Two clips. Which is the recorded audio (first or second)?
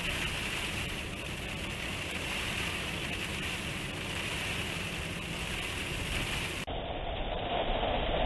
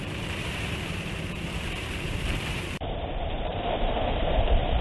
first